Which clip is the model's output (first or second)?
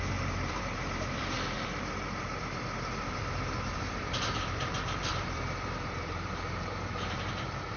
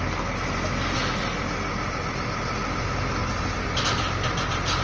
first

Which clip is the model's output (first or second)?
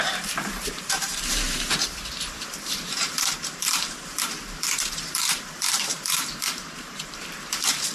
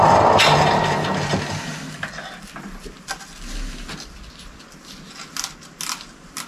first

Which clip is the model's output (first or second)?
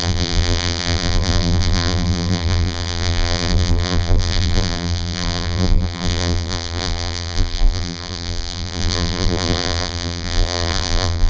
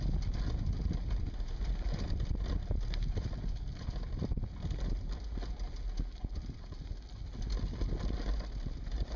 first